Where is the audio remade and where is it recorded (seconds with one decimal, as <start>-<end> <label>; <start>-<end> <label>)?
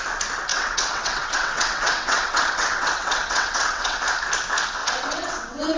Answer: 0.0-0.5 recorded; 0.5-4.0 remade; 4.0-4.8 recorded; 4.8-5.8 remade